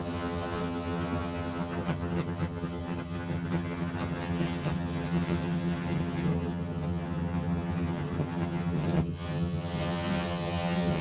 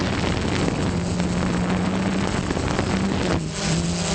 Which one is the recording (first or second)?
second